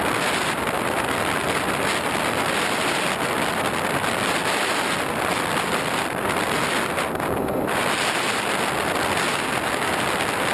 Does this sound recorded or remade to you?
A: recorded